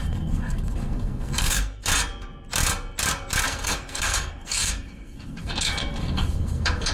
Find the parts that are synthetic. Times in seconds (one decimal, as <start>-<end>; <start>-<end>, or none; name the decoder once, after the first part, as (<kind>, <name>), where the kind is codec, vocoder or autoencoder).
0.0-1.9 (codec, SNAC); 3.4-6.9